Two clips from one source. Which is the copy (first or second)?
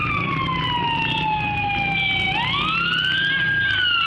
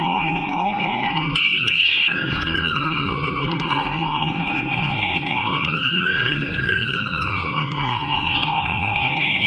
second